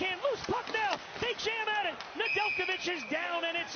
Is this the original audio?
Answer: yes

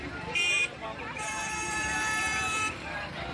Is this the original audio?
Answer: no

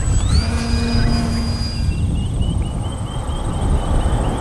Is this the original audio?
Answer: yes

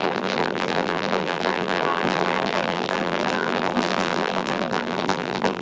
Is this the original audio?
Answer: no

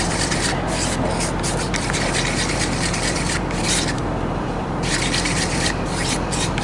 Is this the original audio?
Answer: no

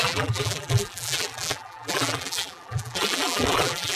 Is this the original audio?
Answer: no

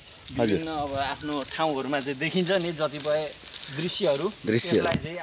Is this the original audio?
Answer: yes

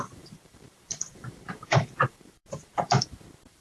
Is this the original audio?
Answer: no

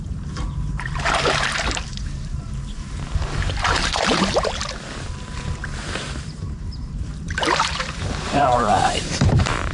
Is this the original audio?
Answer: no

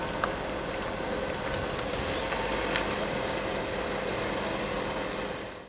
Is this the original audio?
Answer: yes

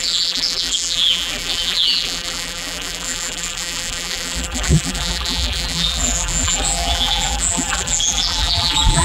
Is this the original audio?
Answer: no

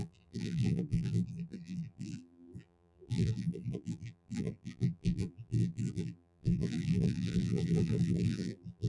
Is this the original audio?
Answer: no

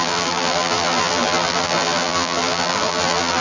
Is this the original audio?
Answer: no